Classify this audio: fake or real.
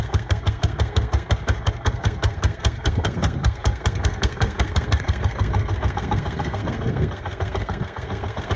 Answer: fake